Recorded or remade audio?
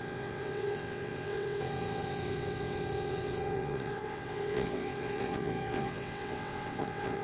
remade